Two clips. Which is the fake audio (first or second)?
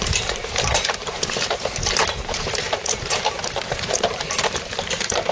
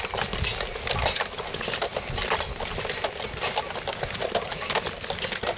first